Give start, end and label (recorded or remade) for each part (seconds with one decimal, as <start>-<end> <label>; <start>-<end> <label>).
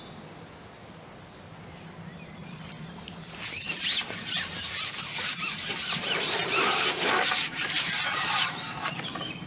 0.0-2.4 recorded; 2.4-7.0 remade; 7.0-9.5 recorded